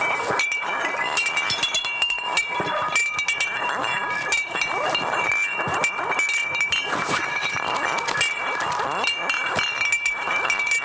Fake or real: real